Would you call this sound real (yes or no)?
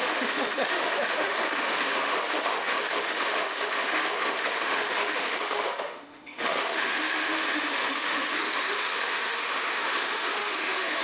no